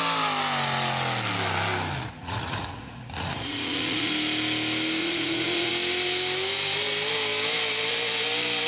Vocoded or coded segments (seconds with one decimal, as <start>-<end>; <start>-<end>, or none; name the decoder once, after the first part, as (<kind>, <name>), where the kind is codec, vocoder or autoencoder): 2.2-4.1 (vocoder, Vocos); 5.0-5.7